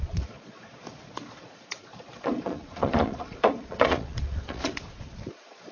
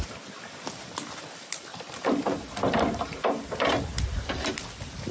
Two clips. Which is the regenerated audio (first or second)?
first